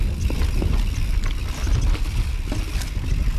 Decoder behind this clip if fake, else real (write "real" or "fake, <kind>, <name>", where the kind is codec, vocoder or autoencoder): real